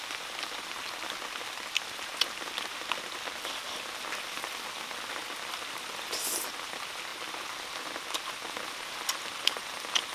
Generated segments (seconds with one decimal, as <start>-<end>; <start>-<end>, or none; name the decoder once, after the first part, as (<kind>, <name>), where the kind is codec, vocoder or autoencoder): none

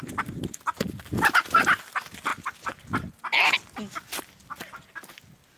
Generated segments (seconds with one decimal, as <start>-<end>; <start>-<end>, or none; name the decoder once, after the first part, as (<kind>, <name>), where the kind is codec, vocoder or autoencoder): none

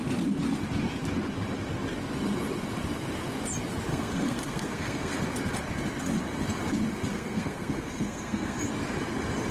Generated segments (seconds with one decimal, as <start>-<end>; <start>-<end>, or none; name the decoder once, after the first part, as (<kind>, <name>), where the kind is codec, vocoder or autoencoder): 3.9-5.2 (codec, SNAC); 7.1-8.6